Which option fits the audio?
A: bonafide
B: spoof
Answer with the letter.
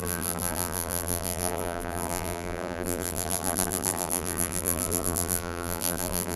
B